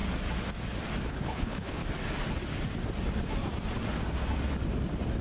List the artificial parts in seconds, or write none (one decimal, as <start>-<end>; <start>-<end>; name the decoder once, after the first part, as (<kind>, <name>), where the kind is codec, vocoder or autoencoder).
1.1-1.8 (codec, HILCodec)